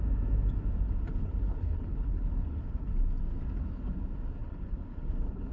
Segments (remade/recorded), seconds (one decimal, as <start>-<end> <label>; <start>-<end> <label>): 0.0-1.1 recorded; 1.1-3.0 remade; 3.0-4.4 recorded; 4.4-5.5 remade